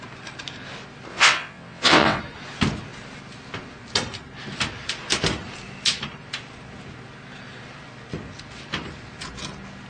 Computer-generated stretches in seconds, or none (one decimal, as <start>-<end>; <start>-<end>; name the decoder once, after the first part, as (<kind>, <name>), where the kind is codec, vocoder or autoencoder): 1.1-2.2 (vocoder, WaveNeXt)